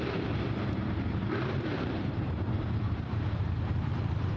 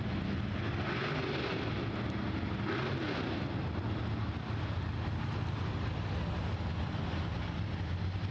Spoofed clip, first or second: first